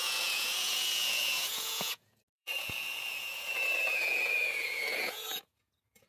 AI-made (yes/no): yes